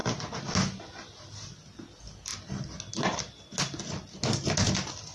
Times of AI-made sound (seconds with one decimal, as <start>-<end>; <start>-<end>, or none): none